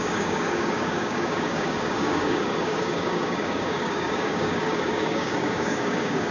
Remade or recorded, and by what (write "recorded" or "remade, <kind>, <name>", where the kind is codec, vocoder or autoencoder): remade, codec, DAC